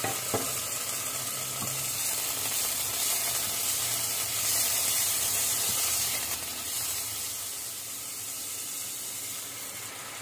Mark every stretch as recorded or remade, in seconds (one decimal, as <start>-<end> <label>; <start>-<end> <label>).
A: 0.0-4.5 recorded; 4.5-7.2 remade; 7.2-10.2 recorded

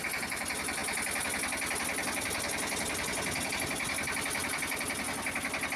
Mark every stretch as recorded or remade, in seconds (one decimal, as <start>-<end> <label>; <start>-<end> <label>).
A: 0.0-5.8 recorded

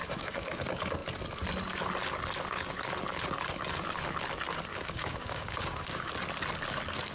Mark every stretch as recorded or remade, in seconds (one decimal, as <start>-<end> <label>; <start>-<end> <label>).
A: 0.0-0.6 remade; 0.6-4.7 recorded; 4.7-6.1 remade; 6.1-7.1 recorded

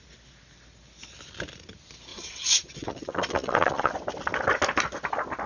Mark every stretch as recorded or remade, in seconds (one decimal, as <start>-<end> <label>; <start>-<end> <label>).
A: 0.0-2.1 recorded; 2.1-3.9 remade; 3.9-5.5 recorded